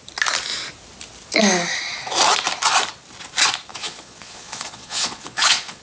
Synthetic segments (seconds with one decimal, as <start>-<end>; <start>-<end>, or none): 3.7-5.8